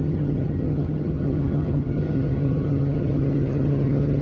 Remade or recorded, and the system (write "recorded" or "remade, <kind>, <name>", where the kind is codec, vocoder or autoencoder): remade, vocoder, HiFi-GAN